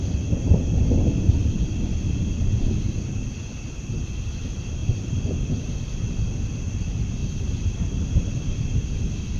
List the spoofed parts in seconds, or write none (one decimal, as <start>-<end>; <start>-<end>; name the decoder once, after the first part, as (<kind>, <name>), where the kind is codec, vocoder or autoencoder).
1.4-2.1 (vocoder, BigVGAN v2); 4.8-5.3; 7.2-8.6